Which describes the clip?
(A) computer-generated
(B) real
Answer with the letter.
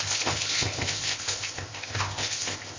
A